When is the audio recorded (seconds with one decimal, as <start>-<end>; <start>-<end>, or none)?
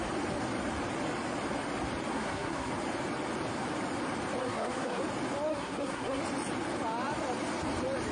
0.0-2.1; 2.7-4.4; 5.0-5.5; 6.2-8.1